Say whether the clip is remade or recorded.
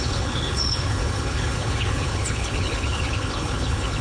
remade